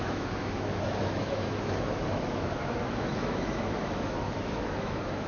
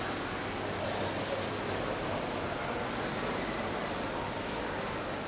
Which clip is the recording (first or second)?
second